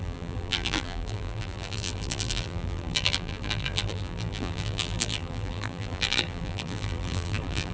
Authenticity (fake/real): fake